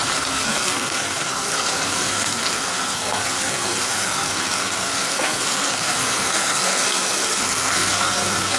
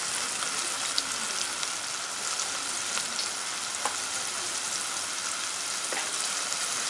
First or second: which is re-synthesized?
first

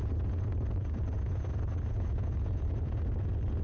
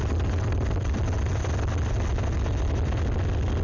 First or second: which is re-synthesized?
first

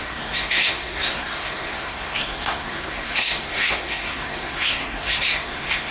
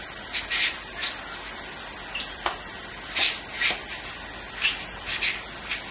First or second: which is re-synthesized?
first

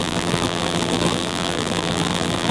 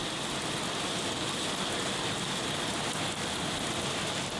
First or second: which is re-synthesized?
first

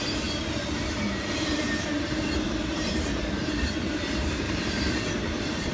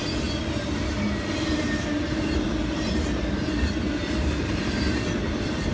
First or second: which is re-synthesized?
first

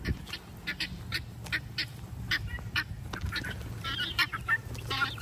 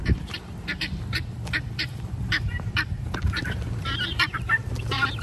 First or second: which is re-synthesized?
second